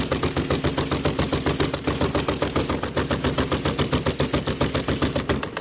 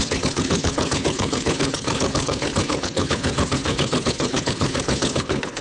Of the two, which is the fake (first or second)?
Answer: second